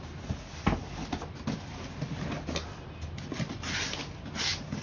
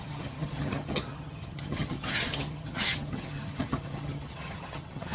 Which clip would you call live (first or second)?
first